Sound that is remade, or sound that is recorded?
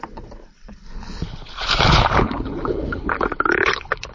remade